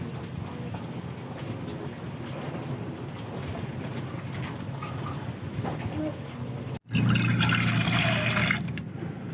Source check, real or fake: real